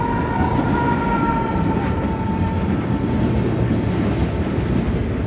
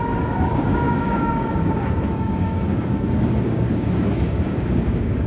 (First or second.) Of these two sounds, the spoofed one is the second